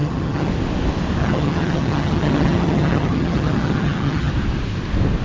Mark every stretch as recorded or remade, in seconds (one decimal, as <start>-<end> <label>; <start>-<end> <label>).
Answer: 0.0-0.5 remade; 0.5-1.2 recorded; 1.2-4.3 remade; 4.3-5.2 recorded